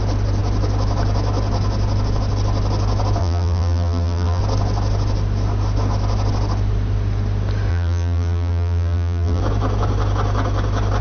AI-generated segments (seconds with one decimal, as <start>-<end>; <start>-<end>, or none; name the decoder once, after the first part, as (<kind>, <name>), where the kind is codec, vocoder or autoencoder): 3.2-4.4 (vocoder, BigVGAN v2); 7.7-9.4